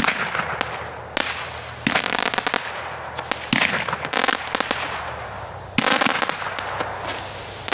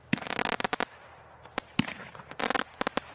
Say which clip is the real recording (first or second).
first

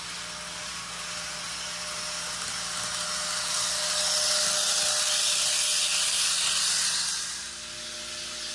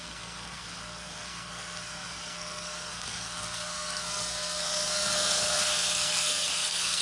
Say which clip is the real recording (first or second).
first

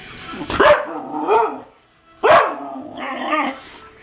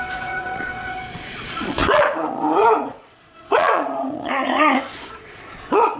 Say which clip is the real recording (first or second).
first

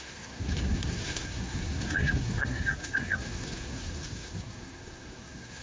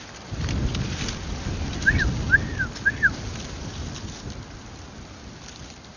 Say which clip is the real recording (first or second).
second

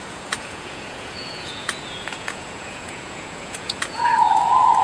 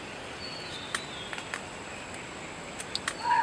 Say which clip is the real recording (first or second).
second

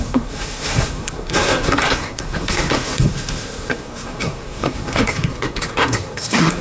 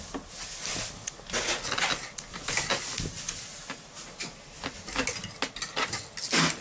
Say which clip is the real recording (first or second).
second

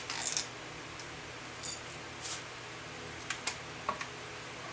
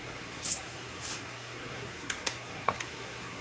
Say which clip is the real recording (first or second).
first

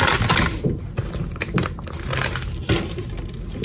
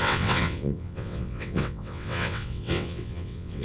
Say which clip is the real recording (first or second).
first